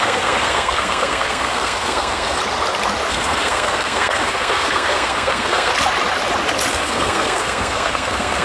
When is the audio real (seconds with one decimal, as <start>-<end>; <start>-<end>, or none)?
2.4-3.1; 5.7-6.7